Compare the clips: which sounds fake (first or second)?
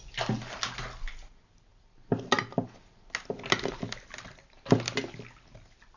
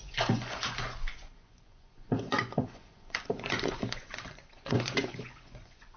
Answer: second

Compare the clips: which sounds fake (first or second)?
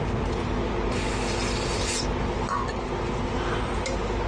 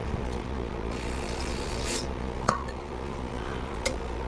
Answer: second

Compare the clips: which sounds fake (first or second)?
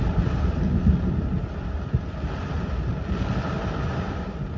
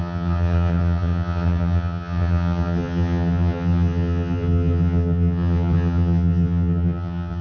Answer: second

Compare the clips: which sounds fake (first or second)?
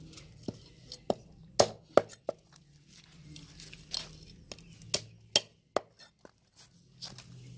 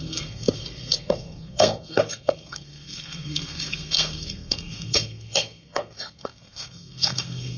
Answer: second